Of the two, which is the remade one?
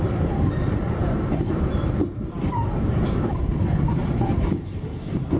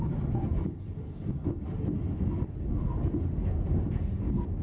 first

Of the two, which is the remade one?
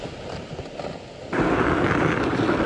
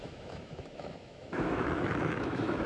second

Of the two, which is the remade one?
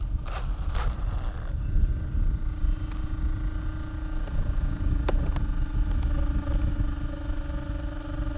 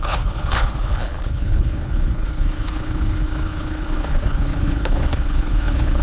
second